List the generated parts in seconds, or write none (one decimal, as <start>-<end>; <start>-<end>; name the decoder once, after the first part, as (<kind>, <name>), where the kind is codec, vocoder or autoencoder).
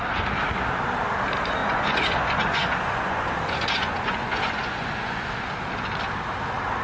1.6-5.5 (vocoder, Vocos)